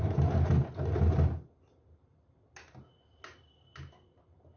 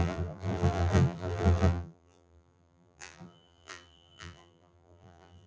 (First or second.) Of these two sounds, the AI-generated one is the second